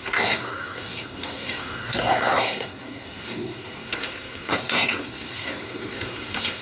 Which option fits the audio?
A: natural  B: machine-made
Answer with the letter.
B